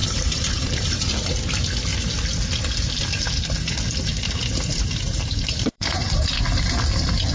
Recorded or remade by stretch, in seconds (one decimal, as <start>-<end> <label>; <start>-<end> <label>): 0.0-1.1 remade; 1.1-4.7 recorded; 4.7-6.4 remade; 6.4-7.3 recorded

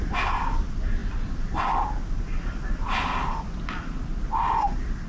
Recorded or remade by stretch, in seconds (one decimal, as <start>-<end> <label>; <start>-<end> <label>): 0.0-5.1 recorded

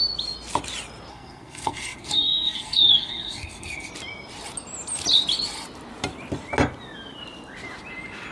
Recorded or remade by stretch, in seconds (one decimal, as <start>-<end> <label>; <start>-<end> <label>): 0.0-1.1 recorded; 1.1-3.9 remade; 3.9-8.3 recorded

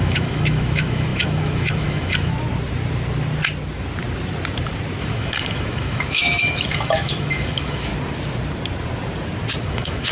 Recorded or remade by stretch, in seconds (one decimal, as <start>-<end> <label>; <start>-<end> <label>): 0.0-2.3 remade; 2.3-5.0 recorded; 5.0-7.9 remade; 7.9-9.7 recorded; 9.7-10.1 remade

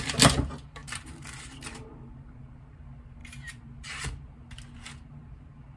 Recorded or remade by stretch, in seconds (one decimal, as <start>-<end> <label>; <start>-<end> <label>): 0.0-0.8 recorded; 0.8-2.5 remade; 2.5-3.2 recorded; 3.2-4.0 remade; 4.0-5.8 recorded

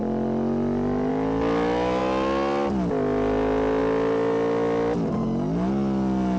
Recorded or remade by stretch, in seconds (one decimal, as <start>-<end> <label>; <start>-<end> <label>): 0.0-6.4 recorded